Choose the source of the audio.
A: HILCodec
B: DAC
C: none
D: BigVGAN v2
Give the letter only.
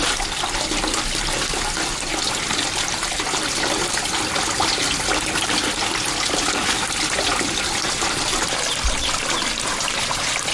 C